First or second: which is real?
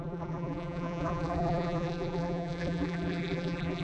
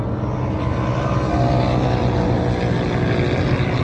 second